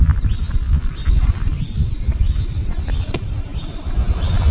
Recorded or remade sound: recorded